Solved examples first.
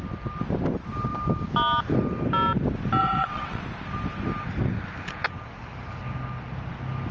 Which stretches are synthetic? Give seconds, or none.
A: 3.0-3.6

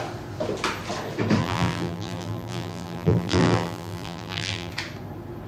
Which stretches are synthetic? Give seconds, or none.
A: 1.4-4.7

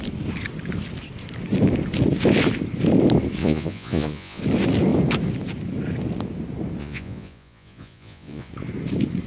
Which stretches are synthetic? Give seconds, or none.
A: 3.4-4.4; 6.8-8.5

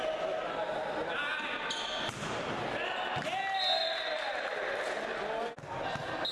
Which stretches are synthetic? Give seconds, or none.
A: none

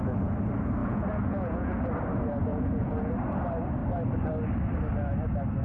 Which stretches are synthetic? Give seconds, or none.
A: 0.8-1.9; 2.5-3.1

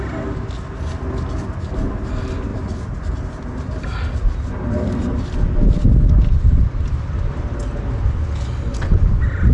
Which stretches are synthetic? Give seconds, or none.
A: none